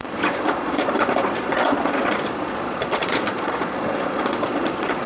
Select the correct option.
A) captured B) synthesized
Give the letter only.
B